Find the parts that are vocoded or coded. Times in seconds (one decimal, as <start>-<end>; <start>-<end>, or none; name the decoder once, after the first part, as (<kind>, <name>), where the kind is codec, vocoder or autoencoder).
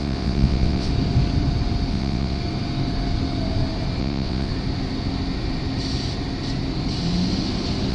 0.0-0.9 (vocoder, WaveNeXt); 1.9-2.4; 4.0-4.5